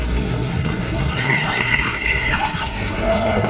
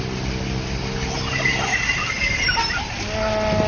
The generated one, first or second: first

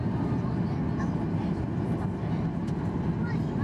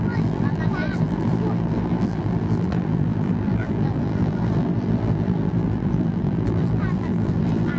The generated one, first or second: second